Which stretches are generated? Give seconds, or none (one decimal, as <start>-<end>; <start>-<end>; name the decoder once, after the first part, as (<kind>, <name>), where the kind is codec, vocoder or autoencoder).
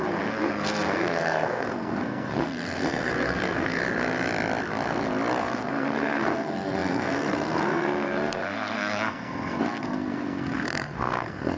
0.0-3.8 (codec, SNAC); 5.4-11.6